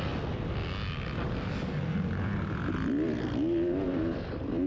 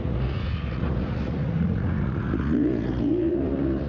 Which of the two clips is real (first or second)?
first